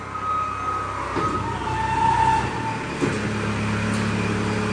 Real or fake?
real